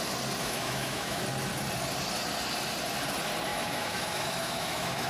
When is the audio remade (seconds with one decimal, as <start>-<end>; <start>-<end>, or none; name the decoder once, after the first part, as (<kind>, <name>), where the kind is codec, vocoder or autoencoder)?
0.4-1.2 (autoencoder, DAC-VAE); 3.5-5.1